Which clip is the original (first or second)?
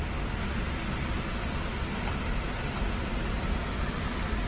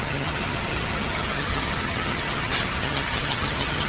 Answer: first